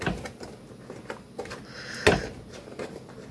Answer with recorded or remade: recorded